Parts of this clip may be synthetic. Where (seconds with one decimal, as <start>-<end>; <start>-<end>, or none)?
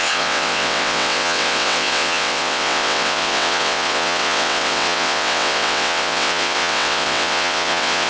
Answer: 0.0-8.1